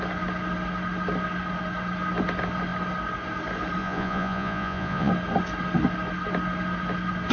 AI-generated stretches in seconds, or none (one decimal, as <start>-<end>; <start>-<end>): 3.8-5.1